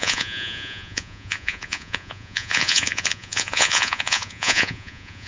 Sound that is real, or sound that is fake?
fake